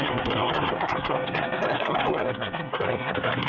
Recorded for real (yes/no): no